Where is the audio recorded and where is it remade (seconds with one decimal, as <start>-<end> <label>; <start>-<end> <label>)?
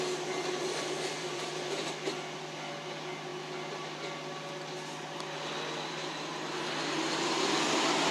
0.0-1.2 recorded; 1.2-1.9 remade; 1.9-8.1 recorded